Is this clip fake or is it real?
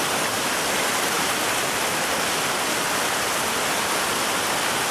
real